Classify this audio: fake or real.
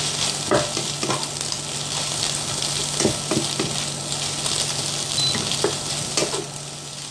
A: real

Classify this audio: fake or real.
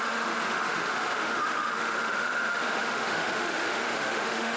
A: fake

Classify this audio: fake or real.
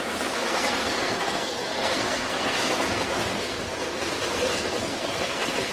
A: fake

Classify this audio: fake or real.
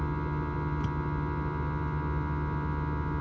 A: real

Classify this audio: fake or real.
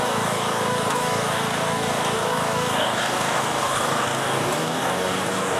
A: fake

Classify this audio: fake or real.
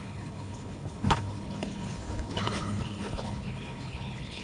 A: fake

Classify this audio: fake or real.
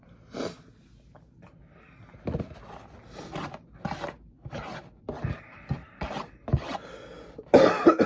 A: real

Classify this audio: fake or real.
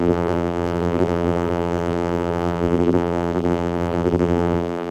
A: fake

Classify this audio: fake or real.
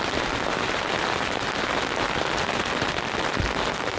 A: real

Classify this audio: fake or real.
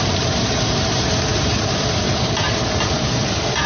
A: fake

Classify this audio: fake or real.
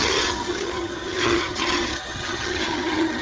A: fake